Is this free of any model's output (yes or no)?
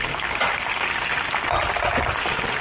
yes